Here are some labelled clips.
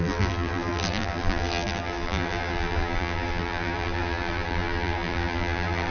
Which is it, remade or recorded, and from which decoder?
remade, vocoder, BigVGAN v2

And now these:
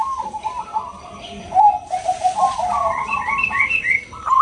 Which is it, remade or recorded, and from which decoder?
remade, vocoder, BigVGAN v2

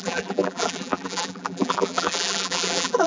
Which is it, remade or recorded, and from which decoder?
remade, vocoder, BigVGAN v2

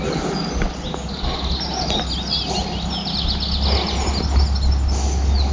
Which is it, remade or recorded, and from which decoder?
recorded